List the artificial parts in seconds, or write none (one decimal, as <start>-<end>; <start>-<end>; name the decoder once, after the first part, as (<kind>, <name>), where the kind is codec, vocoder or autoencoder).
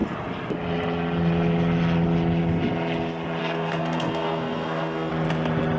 3.4-5.1 (codec, SNAC)